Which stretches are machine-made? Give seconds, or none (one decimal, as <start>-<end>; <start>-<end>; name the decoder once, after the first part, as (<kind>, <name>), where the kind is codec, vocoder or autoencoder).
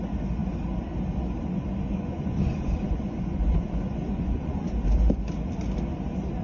1.8-4.7 (vocoder, Vocos)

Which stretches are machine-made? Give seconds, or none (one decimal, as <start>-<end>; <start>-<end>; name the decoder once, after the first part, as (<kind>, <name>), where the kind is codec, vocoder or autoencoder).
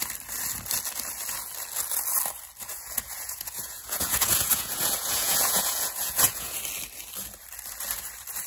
2.7-6.6 (vocoder, Vocos)